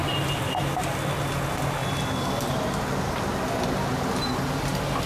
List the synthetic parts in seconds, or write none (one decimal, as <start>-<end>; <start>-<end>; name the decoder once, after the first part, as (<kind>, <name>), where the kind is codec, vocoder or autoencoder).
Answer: none